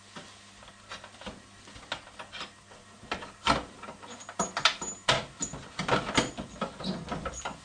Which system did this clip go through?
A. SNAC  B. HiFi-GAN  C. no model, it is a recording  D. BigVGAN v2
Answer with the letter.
C